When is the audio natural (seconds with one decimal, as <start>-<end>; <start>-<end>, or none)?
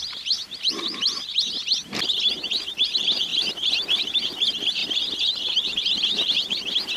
3.3-4.0